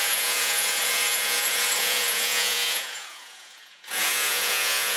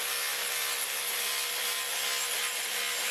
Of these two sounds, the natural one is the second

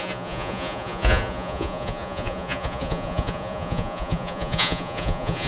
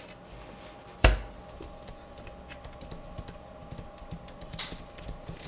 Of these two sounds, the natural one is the second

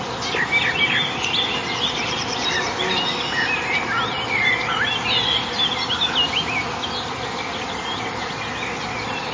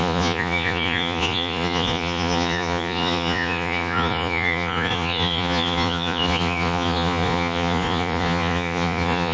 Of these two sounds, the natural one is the first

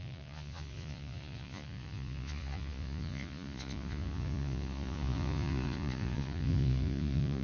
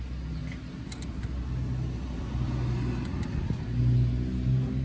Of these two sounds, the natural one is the second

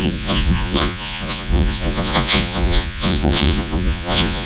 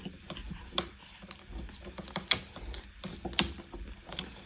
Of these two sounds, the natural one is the second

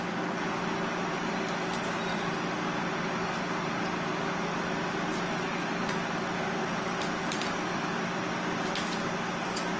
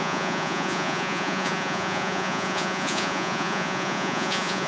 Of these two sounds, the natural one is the first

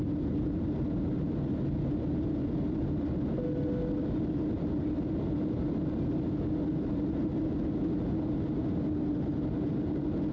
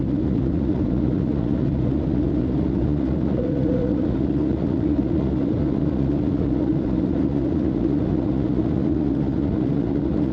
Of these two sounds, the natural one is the first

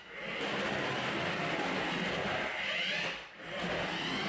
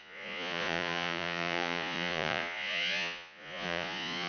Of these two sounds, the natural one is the first